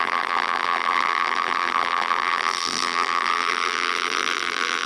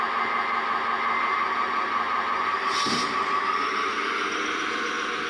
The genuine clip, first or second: second